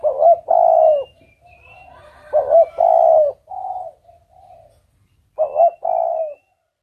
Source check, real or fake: real